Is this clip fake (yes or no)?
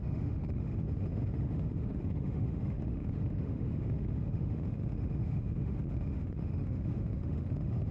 yes